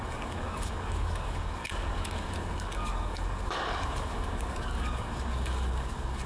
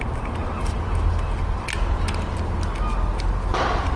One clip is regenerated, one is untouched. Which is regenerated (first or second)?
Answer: first